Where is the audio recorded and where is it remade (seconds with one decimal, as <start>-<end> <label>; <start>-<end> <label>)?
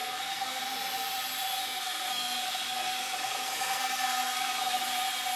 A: 0.0-0.6 remade; 0.6-1.6 recorded; 1.6-4.8 remade; 4.8-5.4 recorded